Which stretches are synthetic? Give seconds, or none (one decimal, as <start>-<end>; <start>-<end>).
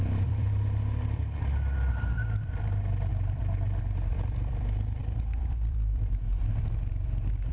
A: 0.0-1.2; 1.9-7.5